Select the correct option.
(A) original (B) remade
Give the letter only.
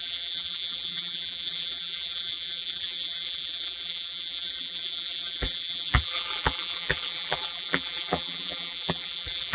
B